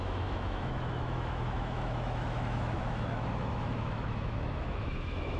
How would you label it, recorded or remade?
remade